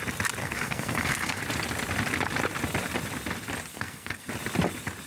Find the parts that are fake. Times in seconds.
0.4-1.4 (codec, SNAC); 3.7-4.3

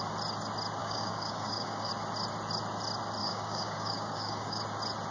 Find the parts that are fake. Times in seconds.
0.8-1.9 (codec, DAC); 3.2-4.6

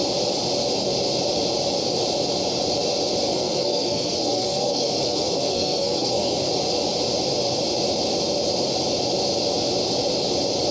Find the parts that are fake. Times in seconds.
3.3-6.5 (codec, SNAC)

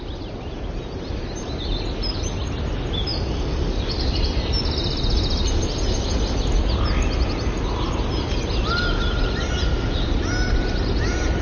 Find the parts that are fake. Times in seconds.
none